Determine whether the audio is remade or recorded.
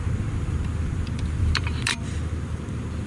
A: remade